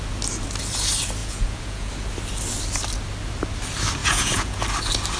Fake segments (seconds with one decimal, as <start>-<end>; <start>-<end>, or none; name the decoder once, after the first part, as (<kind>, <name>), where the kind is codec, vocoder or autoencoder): 1.2-1.9 (vocoder, Vocos); 4.0-4.6